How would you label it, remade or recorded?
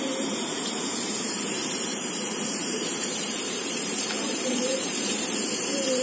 remade